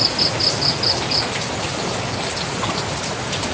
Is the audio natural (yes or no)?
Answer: yes